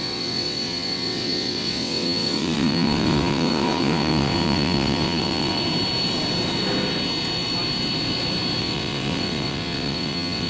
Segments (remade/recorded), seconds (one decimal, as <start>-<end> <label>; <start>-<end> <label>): 0.0-5.6 remade; 5.6-8.6 recorded; 8.6-10.5 remade